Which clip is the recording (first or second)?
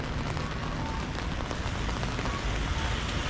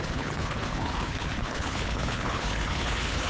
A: first